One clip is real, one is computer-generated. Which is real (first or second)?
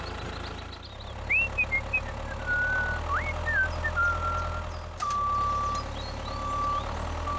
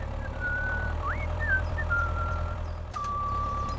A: first